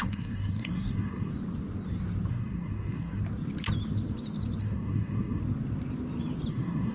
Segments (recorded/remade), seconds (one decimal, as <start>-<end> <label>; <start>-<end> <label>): 0.0-1.3 remade; 1.3-2.3 recorded; 2.3-3.2 remade; 3.2-4.6 recorded; 4.6-5.4 remade; 5.4-6.5 recorded; 6.5-6.9 remade